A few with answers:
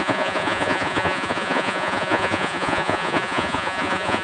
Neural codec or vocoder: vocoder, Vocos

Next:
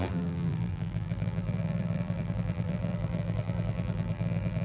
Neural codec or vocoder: vocoder, BigVGAN v2